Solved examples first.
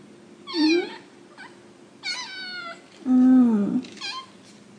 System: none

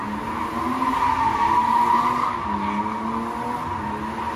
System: none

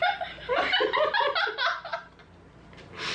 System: none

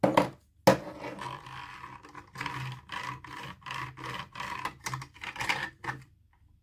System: none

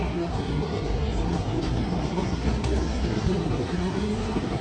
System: codec, SNAC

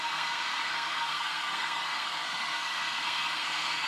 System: codec, SNAC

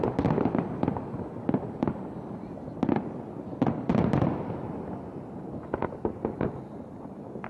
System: none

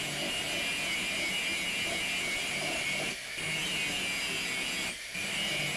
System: none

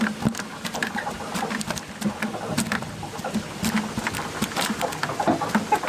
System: none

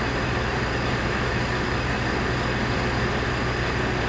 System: none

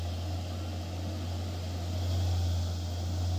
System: none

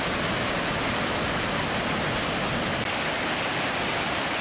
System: none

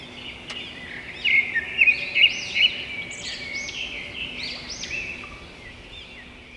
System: none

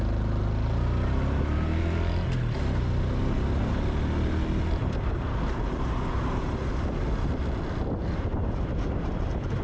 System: none